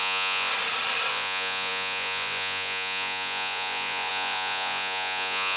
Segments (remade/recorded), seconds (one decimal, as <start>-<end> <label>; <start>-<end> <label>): 0.0-0.5 remade; 0.5-1.1 recorded; 1.1-5.6 remade